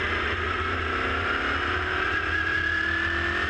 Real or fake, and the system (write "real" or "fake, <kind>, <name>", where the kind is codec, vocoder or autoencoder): real